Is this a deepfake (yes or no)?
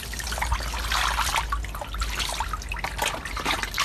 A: no